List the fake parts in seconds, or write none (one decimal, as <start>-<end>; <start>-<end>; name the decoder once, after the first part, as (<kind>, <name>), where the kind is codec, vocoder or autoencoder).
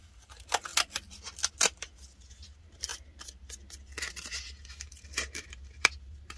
0.0-0.7 (vocoder, BigVGAN v2); 1.5-2.9; 4.0-6.4